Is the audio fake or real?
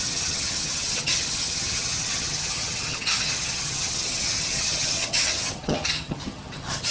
fake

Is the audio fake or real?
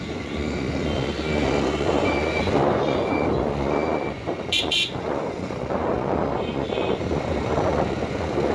fake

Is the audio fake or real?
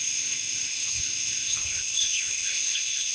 fake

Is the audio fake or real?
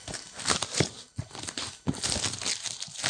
real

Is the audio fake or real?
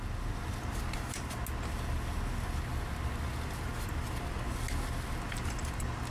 real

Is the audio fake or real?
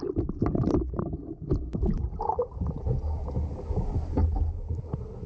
real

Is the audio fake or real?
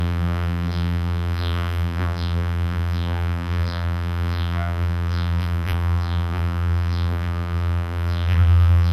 fake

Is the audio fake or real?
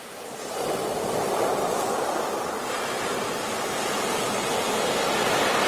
real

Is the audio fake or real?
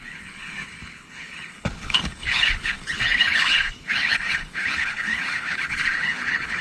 fake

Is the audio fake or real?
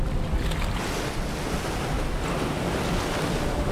real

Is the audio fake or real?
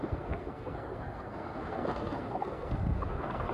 fake